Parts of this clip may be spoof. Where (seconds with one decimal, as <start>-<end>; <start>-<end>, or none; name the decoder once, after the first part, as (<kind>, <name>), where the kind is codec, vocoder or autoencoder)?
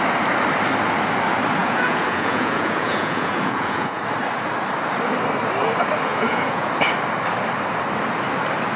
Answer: 1.6-4.0 (vocoder, Vocos); 6.1-6.7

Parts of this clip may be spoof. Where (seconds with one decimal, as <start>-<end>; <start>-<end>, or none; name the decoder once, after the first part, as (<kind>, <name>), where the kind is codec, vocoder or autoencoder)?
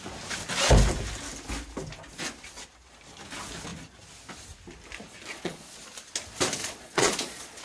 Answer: 5.3-5.8 (vocoder, Vocos); 6.6-7.6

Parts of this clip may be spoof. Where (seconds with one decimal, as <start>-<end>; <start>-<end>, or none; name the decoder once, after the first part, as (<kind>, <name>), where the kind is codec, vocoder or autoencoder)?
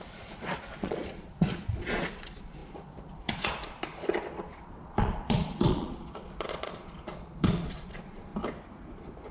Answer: 0.0-8.3 (vocoder, Vocos); 8.9-9.3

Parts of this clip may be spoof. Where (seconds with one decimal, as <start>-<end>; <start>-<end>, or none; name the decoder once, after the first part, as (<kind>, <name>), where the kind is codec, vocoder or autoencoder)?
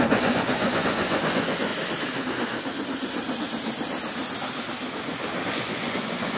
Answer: 0.0-1.7 (vocoder, Vocos); 5.5-6.4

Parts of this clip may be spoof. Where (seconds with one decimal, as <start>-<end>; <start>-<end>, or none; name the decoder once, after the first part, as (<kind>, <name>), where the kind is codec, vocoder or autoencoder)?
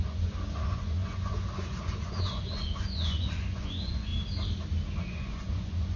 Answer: 0.0-4.1 (vocoder, Vocos); 5.0-6.0